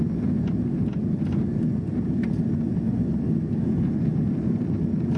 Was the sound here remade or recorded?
recorded